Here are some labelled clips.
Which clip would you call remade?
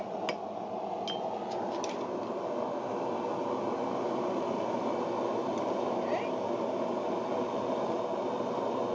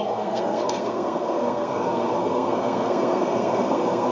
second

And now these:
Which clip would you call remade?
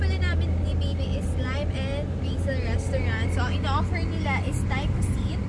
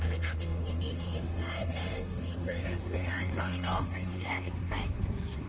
second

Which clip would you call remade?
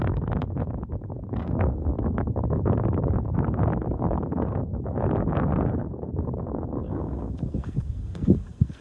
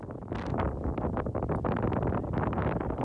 first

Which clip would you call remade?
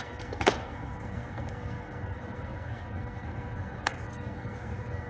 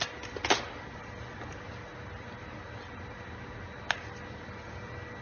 first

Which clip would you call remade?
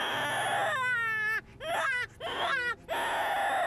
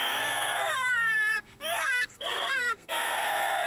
second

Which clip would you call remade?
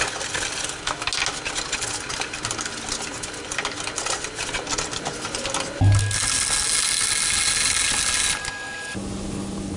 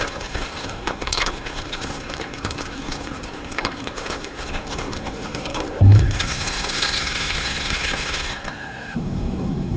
second